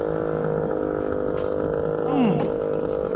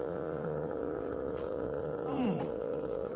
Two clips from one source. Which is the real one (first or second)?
first